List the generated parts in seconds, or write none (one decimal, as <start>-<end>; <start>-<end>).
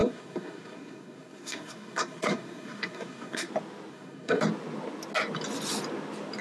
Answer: 0.0-3.5; 3.9-4.4